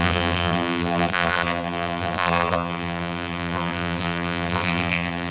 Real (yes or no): no